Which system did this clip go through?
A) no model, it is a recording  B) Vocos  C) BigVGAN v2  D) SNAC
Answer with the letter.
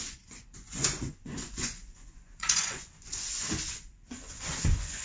B